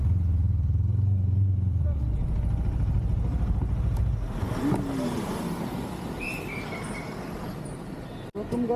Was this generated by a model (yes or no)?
no